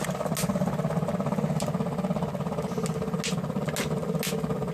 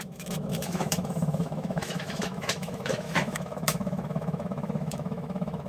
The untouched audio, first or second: first